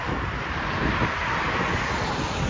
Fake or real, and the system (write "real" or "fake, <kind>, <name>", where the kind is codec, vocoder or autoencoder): real